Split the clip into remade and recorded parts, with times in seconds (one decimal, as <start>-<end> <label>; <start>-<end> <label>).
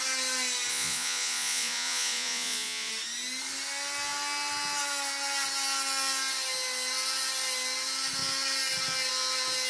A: 0.0-0.7 recorded; 0.7-2.9 remade; 2.9-9.7 recorded